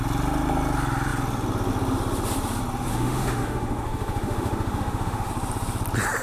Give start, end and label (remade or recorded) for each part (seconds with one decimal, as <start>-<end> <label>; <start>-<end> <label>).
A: 0.0-2.9 recorded; 2.9-5.3 remade; 5.3-6.2 recorded